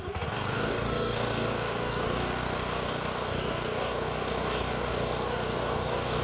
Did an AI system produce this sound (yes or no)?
yes